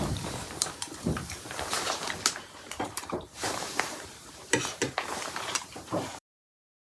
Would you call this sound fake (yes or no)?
yes